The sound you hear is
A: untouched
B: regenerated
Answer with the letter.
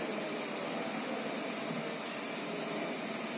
A